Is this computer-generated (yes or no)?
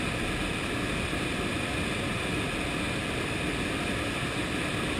no